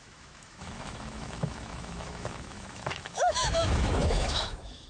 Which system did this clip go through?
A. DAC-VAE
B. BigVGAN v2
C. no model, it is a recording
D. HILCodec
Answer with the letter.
A